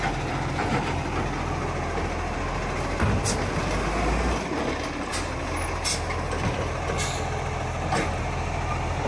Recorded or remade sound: recorded